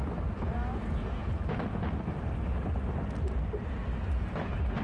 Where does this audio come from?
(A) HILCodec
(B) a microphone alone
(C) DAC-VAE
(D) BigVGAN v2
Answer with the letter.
B